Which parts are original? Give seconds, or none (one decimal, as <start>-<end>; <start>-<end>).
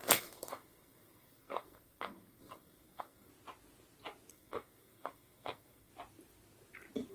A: 3.3-4.3; 5.9-7.1